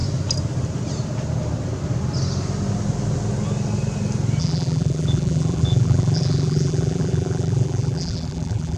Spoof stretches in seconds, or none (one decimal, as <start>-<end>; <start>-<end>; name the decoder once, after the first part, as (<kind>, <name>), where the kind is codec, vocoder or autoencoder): 4.4-8.8 (vocoder, BigVGAN v2)